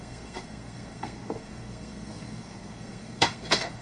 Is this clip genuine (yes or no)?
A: no